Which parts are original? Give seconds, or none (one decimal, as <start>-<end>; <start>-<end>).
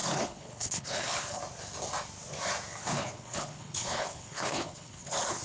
1.4-2.8